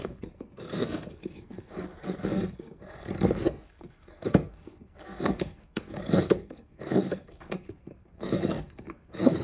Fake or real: fake